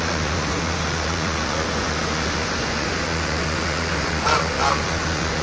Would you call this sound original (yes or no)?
no